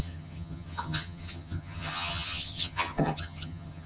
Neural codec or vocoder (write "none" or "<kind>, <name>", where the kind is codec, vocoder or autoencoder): vocoder, HiFi-GAN